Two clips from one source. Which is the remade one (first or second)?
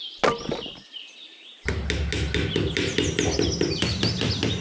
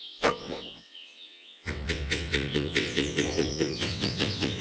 second